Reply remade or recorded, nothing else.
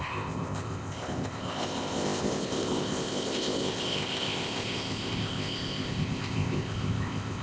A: remade